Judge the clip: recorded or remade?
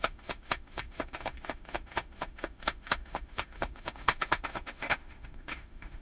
remade